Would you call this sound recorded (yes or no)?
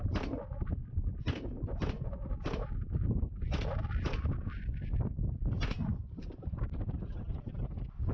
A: yes